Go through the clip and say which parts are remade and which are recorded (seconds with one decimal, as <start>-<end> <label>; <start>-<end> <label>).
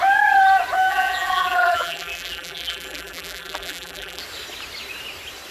0.0-0.9 recorded; 0.9-4.2 remade; 4.2-5.5 recorded